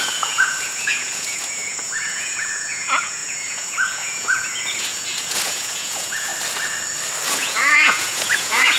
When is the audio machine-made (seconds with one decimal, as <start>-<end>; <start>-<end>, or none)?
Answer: 0.0-6.3; 7.3-8.8

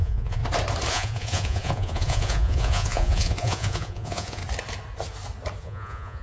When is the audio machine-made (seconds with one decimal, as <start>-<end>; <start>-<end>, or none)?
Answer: 0.0-0.4; 0.9-4.4; 5.6-6.2

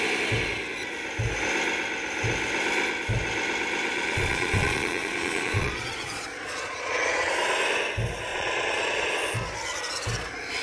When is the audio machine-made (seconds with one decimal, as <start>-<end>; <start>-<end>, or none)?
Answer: 3.9-7.3; 8.3-9.1

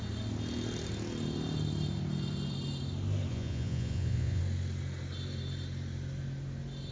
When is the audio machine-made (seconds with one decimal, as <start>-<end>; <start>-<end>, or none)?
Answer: 3.3-4.4

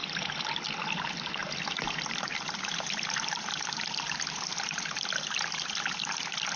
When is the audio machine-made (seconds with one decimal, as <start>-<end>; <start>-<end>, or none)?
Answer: none

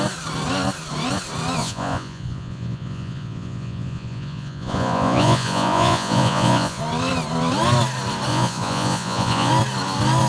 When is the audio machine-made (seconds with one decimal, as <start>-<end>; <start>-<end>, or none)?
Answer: 1.6-6.8; 8.3-9.5

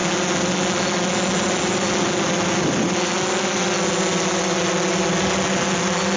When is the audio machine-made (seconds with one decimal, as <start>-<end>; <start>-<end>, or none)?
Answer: none

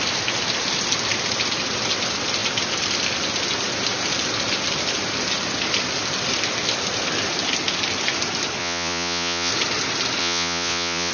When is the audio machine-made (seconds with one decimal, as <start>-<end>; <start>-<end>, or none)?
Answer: 8.6-9.5; 10.2-11.1